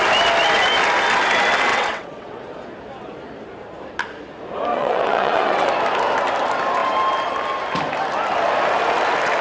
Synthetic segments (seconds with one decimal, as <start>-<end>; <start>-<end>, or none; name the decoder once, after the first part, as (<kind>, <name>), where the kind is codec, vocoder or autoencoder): 1.7-2.4 (vocoder, WaveNeXt); 4.7-5.7